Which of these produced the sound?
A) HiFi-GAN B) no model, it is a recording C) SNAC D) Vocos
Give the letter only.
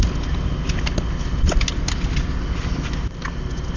B